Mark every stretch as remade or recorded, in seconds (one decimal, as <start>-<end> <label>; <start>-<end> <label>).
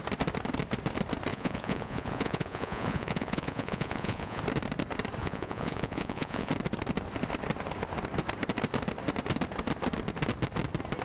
0.0-1.3 recorded; 1.3-4.4 remade; 4.4-5.2 recorded; 5.2-6.5 remade; 6.5-11.0 recorded